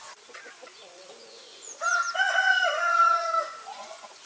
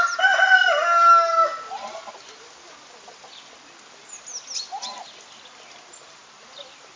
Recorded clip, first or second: second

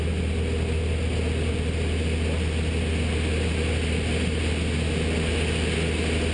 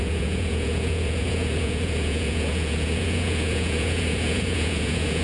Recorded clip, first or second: first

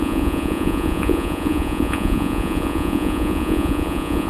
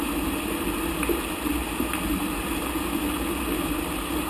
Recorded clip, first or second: second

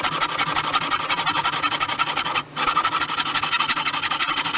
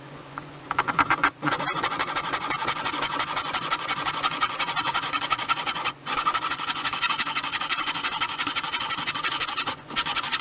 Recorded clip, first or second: first